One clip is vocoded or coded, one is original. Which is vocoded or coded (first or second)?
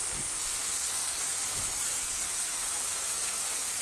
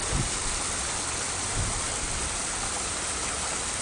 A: first